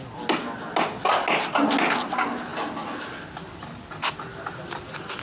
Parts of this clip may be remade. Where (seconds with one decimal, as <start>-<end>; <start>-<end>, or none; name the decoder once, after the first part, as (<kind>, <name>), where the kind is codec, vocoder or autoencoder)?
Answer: none